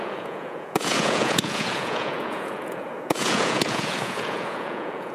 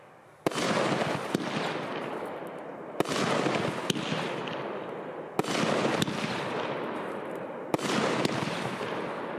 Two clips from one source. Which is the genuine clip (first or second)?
second